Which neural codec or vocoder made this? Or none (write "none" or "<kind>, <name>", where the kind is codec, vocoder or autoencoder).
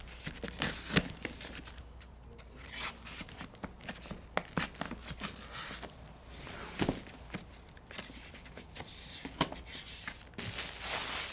none